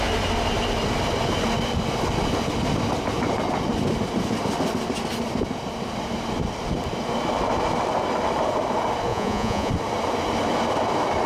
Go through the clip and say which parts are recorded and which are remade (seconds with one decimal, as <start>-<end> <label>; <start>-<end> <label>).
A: 0.0-9.1 recorded; 9.1-9.7 remade; 9.7-11.3 recorded

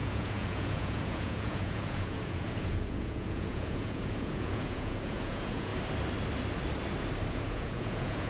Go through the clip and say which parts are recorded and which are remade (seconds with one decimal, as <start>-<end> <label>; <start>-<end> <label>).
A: 0.0-5.7 remade; 5.7-7.3 recorded; 7.3-8.3 remade

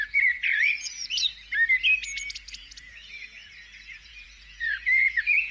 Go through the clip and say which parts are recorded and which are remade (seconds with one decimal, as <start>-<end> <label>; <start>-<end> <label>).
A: 0.0-1.3 remade; 1.3-2.2 recorded; 2.2-5.5 remade

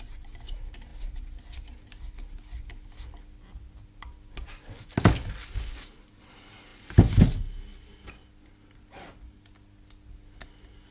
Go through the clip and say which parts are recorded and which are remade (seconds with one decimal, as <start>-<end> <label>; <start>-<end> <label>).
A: 0.0-10.9 recorded

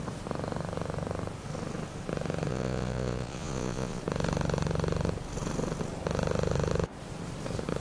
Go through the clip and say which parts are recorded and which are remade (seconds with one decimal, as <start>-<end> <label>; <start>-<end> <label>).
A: 0.0-2.5 recorded; 2.5-4.0 remade; 4.0-7.8 recorded

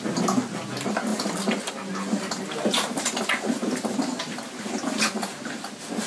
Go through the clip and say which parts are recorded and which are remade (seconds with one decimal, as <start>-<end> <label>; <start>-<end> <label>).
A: 0.0-6.1 recorded